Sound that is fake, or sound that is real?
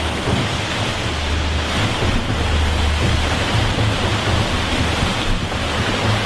real